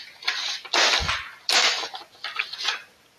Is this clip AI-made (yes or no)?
no